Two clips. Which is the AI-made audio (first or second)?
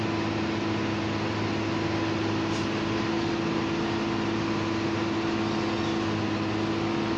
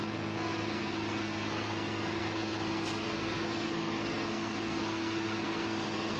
second